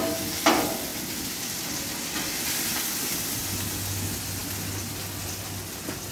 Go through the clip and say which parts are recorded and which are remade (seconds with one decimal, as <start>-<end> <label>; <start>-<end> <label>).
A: 0.0-0.9 recorded; 0.9-1.7 remade; 1.7-2.7 recorded; 2.7-3.4 remade; 3.4-6.1 recorded